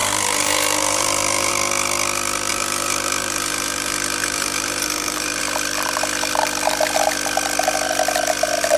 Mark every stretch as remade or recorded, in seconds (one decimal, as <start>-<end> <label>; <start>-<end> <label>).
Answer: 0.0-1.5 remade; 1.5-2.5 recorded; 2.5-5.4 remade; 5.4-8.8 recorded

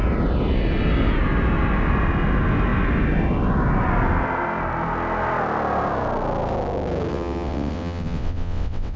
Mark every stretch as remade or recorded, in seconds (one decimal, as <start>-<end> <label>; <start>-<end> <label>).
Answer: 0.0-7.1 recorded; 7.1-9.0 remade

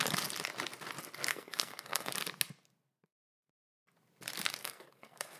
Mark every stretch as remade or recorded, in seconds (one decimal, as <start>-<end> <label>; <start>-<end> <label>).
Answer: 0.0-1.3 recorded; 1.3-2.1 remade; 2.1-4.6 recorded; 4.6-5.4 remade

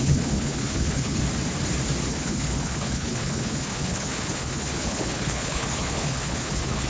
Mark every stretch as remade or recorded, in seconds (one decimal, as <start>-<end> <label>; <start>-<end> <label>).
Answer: 0.0-1.2 remade; 1.2-2.1 recorded; 2.1-6.9 remade